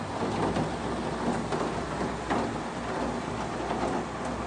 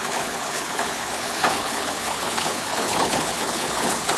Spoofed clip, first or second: second